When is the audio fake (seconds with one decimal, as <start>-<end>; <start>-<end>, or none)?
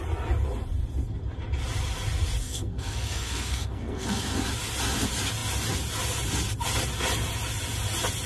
2.4-4.4